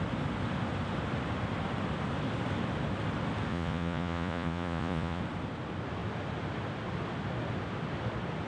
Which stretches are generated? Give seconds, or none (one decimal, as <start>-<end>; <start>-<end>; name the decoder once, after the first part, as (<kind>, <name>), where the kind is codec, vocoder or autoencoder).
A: 3.5-5.2 (vocoder, Vocos)